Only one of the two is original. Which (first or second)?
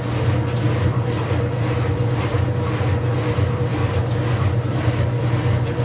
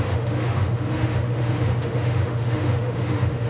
first